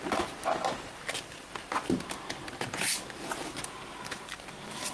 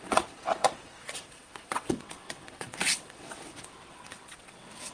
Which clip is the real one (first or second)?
first